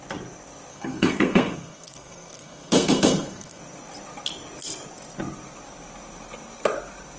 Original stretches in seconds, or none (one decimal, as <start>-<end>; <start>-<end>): 0.0-0.7; 3.6-7.2